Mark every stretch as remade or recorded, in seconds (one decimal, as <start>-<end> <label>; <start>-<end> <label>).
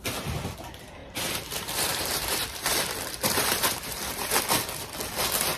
0.0-1.0 recorded; 1.0-4.4 remade; 4.4-5.6 recorded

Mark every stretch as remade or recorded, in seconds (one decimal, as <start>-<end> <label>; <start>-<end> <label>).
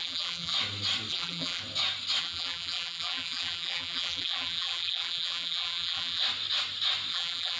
0.0-0.5 remade; 0.5-1.1 recorded; 1.1-1.6 remade; 1.6-2.2 recorded; 2.2-6.2 remade; 6.2-7.1 recorded; 7.1-7.6 remade